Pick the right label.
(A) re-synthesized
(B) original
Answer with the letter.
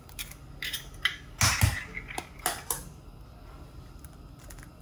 B